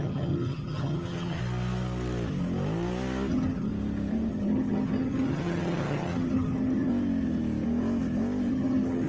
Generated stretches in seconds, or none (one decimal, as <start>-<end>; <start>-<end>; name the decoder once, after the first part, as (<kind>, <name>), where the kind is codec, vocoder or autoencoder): 0.0-1.4 (vocoder, HiFi-GAN); 3.3-3.7; 4.3-6.9; 8.5-9.1